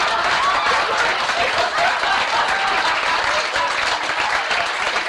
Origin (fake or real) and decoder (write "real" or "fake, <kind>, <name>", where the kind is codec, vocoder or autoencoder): real